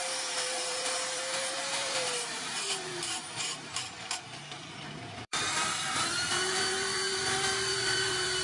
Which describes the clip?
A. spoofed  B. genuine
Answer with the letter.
A